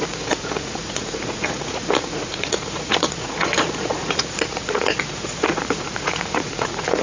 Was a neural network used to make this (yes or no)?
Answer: yes